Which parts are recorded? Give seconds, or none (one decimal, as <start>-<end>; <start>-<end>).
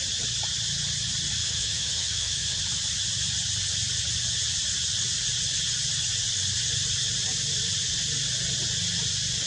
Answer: 0.0-1.4; 2.6-9.5